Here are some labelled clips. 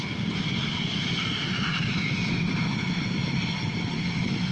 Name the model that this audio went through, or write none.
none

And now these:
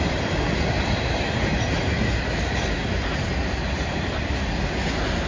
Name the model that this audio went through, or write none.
none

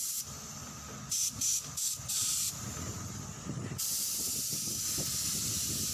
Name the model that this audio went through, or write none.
none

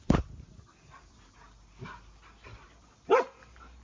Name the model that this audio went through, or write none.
none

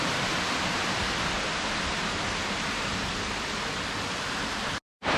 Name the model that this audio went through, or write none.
none